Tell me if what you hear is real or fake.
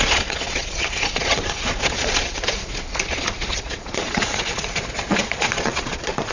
fake